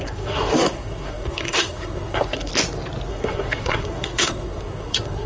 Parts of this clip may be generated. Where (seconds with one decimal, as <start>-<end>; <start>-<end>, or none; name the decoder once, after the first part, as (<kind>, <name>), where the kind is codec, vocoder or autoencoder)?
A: 0.0-2.5 (codec, SNAC); 3.1-5.3